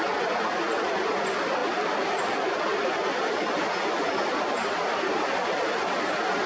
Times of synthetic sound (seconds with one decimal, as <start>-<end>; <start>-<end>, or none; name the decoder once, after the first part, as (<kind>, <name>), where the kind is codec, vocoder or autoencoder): none